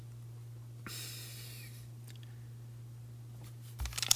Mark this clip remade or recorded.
recorded